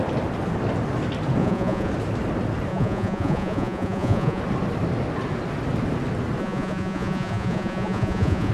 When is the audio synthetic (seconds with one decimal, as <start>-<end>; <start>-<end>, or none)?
1.4-1.9; 2.7-4.4; 6.4-8.5